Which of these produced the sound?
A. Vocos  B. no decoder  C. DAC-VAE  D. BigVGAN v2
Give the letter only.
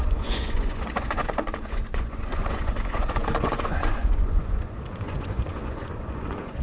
A